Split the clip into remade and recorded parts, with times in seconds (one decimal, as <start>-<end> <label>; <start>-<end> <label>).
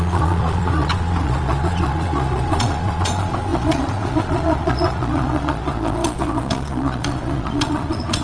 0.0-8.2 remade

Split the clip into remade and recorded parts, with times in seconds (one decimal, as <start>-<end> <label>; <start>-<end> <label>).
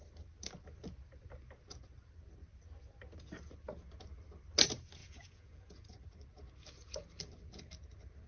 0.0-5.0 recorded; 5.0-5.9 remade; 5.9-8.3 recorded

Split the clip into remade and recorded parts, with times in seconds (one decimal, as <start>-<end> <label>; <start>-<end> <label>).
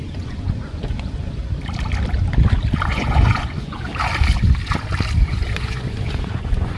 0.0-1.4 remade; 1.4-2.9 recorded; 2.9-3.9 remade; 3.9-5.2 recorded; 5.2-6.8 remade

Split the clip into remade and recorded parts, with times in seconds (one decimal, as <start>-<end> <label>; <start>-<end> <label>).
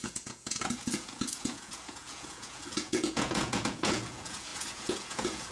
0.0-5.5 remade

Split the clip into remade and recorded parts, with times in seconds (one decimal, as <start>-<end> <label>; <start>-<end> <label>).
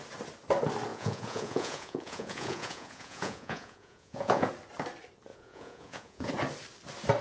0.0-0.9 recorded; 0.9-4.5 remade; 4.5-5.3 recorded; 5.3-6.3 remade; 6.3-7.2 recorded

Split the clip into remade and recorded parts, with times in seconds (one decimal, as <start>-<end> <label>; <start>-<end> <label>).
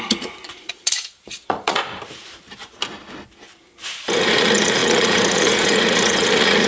0.0-1.8 remade; 1.8-4.2 recorded; 4.2-6.7 remade